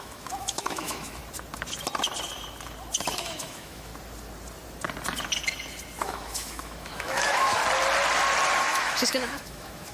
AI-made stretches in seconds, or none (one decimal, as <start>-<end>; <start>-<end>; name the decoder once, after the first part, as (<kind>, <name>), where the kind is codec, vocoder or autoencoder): 0.0-1.2 (autoencoder, DAC-VAE); 3.1-3.9; 6.0-7.6; 8.6-9.9